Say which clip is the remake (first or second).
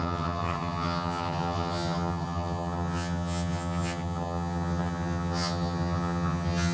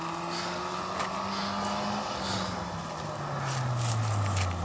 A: first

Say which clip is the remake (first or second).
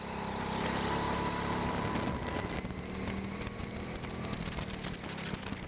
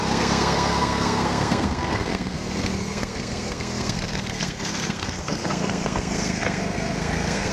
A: second